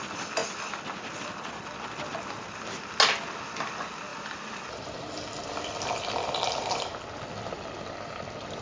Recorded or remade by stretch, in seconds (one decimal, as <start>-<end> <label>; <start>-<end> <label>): 0.0-4.1 recorded; 4.1-5.1 remade; 5.1-8.6 recorded